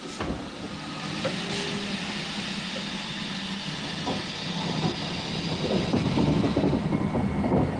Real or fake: real